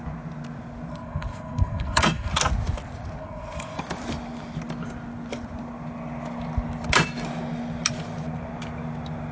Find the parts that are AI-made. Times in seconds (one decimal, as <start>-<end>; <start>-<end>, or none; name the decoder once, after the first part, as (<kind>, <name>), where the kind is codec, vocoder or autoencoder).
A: 0.9-2.3 (codec, SNAC); 3.2-3.8